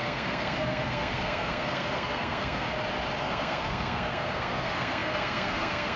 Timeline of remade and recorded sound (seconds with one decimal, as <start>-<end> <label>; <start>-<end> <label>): 0.0-2.7 remade; 2.7-3.2 recorded; 3.2-6.0 remade